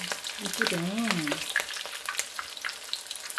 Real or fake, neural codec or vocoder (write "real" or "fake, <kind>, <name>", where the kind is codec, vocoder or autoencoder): real